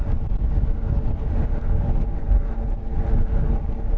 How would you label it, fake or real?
real